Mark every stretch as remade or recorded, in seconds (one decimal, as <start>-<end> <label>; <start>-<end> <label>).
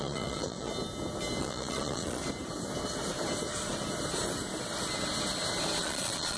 0.0-0.7 remade; 0.7-1.4 recorded; 1.4-2.2 remade; 2.2-5.8 recorded; 5.8-6.4 remade